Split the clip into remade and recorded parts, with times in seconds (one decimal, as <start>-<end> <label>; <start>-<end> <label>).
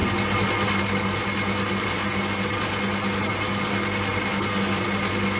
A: 0.0-5.4 recorded